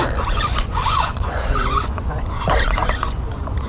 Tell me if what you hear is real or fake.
fake